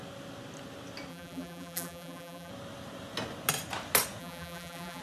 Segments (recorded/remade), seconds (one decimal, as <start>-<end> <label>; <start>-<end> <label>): 0.0-1.1 recorded; 1.1-2.5 remade; 2.5-4.2 recorded; 4.2-5.0 remade